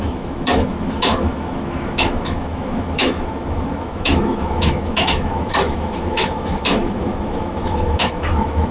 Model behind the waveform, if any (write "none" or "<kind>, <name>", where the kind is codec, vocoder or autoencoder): autoencoder, DAC-VAE